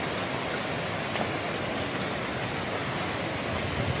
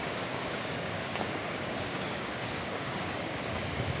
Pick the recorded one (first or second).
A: first